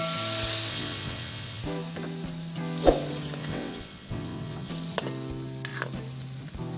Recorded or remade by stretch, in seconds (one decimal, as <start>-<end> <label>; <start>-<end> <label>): 0.0-0.7 recorded; 0.7-1.6 remade; 1.6-3.4 recorded; 3.4-4.7 remade; 4.7-6.8 recorded